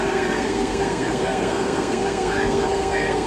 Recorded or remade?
remade